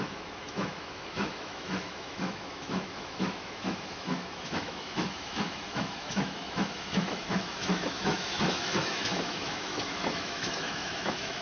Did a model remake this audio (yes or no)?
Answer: yes